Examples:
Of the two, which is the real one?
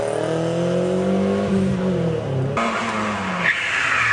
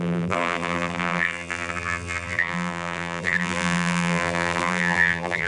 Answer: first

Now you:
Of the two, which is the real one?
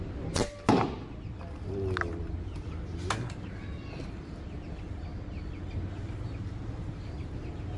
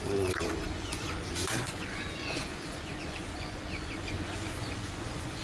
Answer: first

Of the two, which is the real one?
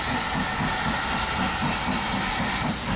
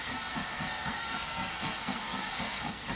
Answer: first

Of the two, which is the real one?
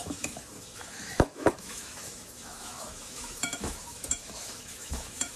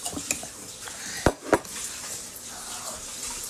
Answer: second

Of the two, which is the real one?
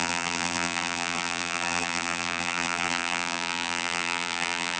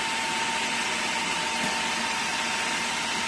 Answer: second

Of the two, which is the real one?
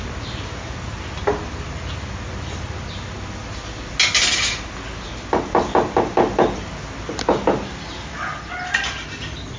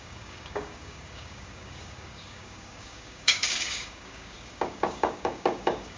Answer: first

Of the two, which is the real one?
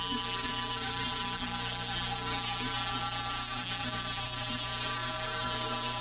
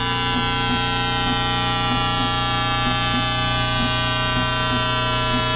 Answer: second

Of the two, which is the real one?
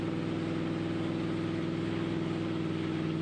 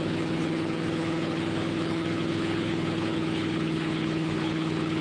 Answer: first